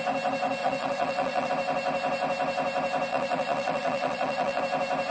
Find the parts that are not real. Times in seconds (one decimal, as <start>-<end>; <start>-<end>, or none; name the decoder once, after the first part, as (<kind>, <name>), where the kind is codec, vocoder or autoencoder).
0.6-1.5 (vocoder, WaveNeXt); 3.1-4.6